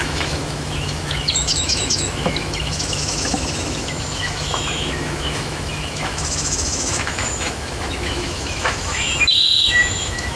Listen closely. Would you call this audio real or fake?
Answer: fake